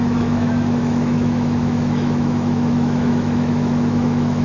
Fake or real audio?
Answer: fake